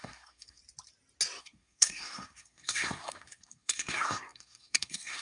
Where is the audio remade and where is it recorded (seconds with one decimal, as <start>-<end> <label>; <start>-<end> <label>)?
0.0-0.6 remade; 0.6-1.4 recorded; 1.4-5.2 remade